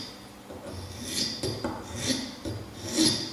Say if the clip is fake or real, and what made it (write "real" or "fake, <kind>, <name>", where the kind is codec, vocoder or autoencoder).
real